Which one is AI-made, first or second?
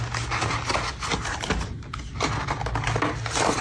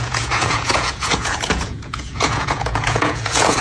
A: second